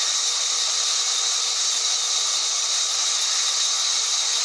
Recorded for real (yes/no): yes